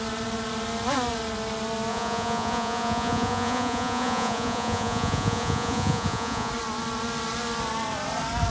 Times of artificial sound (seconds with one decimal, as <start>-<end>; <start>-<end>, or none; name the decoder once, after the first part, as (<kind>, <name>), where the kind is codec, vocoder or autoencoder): 1.9-6.5 (vocoder, Vocos)